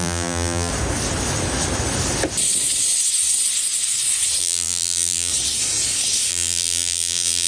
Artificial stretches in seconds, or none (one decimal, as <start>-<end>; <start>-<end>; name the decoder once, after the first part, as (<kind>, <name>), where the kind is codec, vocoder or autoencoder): 0.0-0.7 (vocoder, BigVGAN v2); 4.4-5.3; 6.3-7.5

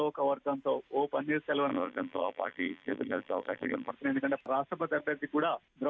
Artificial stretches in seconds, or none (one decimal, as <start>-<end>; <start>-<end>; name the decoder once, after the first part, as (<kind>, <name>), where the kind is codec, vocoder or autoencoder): 1.7-3.9 (vocoder, BigVGAN v2)

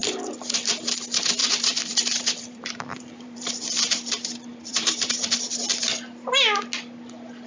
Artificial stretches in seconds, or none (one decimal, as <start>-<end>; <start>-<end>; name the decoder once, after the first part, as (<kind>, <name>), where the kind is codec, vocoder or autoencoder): 0.0-0.8 (vocoder, BigVGAN v2); 1.4-3.5; 4.5-5.4

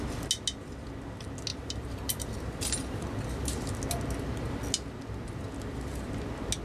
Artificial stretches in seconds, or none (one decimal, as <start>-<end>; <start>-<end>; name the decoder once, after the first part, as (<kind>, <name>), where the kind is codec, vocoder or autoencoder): 1.5-3.8 (vocoder, BigVGAN v2)

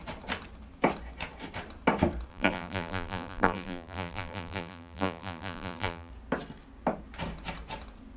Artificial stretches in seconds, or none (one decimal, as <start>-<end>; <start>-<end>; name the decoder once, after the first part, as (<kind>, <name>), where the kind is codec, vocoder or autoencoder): 2.3-6.1 (vocoder, BigVGAN v2)

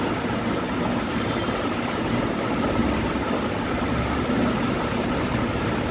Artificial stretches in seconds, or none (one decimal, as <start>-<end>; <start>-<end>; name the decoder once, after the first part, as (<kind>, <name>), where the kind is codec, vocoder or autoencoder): 0.0-2.8 (vocoder, BigVGAN v2); 3.7-5.9

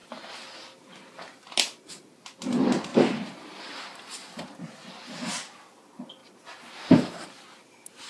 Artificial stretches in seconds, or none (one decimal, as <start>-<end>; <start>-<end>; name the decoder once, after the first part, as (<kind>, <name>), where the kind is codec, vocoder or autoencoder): 2.9-3.6 (vocoder, BigVGAN v2); 6.2-7.3

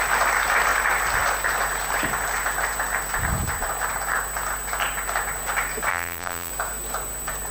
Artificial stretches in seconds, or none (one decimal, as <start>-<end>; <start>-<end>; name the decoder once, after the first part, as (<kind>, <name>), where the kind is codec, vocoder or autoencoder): 5.9-6.5 (vocoder, BigVGAN v2)